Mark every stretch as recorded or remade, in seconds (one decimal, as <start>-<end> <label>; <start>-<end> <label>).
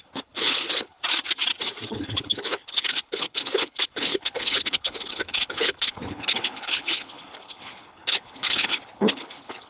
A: 0.0-1.0 remade; 1.0-1.9 recorded; 1.9-9.7 remade